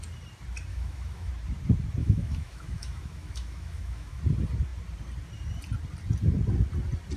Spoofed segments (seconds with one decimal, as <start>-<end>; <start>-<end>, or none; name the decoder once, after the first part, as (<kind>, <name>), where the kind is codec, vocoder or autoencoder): 0.7-1.3 (autoencoder, DAC-VAE); 2.0-4.2